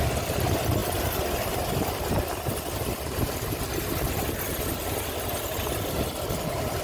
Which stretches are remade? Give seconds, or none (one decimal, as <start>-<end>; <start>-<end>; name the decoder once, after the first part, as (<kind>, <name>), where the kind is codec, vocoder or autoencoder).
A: none

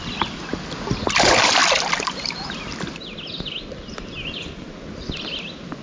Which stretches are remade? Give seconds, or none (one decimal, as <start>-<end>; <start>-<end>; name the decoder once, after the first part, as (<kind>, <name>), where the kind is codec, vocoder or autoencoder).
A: none

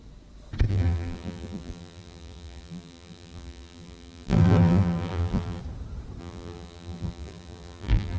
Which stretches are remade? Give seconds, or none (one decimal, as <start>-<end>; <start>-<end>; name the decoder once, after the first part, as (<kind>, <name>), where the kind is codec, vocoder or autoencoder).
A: 0.7-5.6 (vocoder, BigVGAN v2); 6.2-8.2

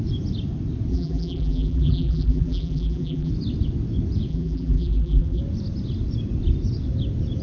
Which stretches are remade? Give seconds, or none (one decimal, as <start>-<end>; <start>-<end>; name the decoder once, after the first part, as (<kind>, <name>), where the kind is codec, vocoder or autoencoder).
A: 0.9-3.3 (vocoder, BigVGAN v2); 4.3-5.4

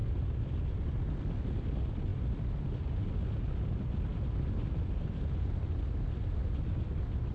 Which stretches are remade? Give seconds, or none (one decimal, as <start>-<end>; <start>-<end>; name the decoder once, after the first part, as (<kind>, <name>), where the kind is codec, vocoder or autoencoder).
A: none

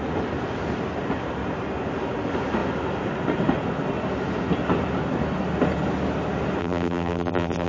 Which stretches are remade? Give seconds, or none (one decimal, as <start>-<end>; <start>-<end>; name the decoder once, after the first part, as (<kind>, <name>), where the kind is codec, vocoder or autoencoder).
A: 6.6-7.7 (vocoder, BigVGAN v2)

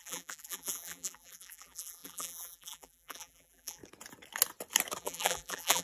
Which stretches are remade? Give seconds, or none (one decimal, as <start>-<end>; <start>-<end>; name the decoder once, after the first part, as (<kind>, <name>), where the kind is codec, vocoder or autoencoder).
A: 0.0-3.8 (vocoder, BigVGAN v2); 5.0-5.8